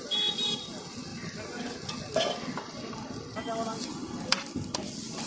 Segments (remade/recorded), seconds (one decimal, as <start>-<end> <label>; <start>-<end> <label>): 0.0-1.1 recorded; 1.1-1.9 remade; 1.9-4.0 recorded; 4.0-5.3 remade